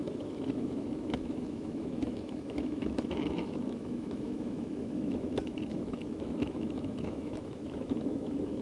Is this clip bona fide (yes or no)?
no